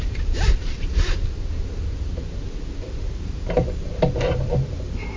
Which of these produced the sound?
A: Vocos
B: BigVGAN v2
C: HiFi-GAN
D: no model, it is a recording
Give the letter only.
B